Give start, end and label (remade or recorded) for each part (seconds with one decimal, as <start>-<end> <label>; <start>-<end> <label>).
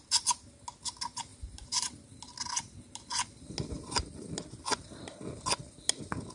0.0-6.3 recorded